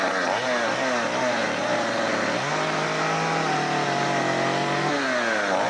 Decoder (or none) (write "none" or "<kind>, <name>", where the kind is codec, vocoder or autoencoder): none